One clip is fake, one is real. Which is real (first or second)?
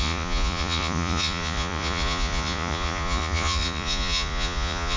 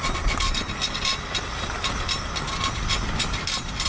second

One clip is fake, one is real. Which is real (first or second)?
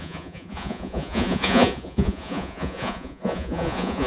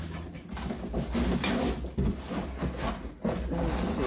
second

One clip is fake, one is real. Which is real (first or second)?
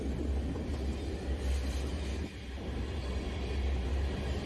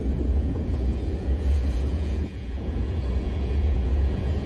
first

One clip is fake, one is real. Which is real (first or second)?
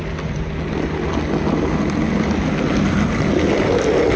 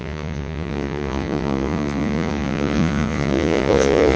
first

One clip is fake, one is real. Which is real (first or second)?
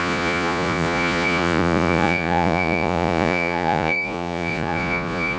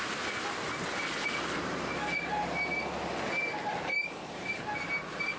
second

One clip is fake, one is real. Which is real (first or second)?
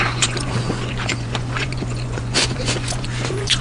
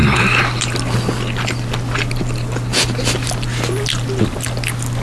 second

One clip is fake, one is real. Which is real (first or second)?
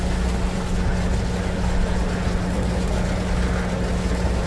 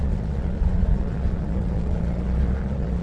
first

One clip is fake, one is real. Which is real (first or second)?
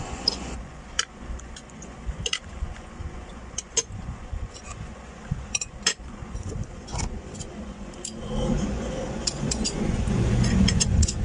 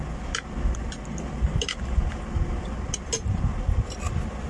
second